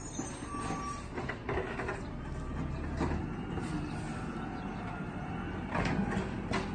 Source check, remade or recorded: recorded